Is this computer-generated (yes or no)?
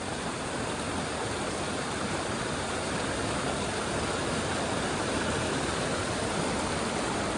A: no